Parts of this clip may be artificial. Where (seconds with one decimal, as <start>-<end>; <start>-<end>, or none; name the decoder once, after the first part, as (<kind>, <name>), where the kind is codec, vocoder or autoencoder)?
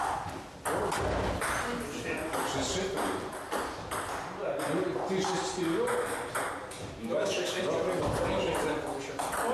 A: 7.0-7.6 (autoencoder, DAC-VAE)